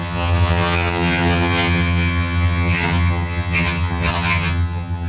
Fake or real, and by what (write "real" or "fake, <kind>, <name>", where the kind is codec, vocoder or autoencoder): fake, vocoder, HiFi-GAN